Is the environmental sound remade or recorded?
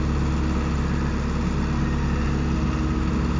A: recorded